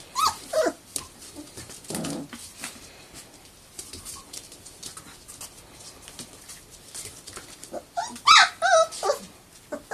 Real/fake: real